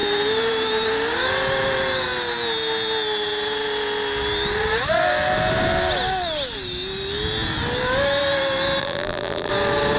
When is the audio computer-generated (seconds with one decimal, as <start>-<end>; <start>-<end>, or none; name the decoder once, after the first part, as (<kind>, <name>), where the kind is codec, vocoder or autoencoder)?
8.8-9.5 (vocoder, BigVGAN v2)